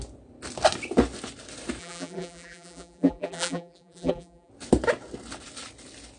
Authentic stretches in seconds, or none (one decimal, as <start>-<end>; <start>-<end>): 0.0-1.8; 4.5-6.2